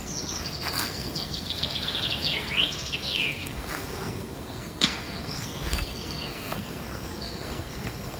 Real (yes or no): no